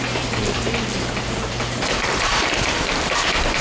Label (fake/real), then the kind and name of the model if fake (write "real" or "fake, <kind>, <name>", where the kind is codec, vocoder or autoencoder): fake, vocoder, BigVGAN v2